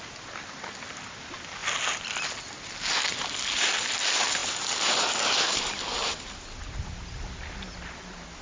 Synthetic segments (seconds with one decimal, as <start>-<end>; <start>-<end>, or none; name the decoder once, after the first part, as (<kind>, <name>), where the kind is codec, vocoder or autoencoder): none